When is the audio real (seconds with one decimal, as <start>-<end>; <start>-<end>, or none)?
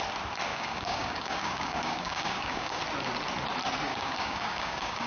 0.0-0.5; 2.8-3.9